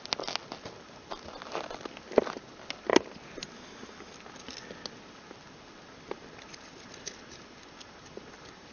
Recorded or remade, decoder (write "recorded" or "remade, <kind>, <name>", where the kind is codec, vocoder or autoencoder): recorded